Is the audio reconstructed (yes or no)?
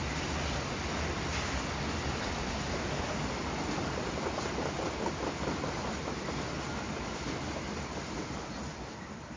no